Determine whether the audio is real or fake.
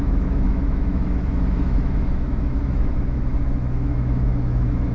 fake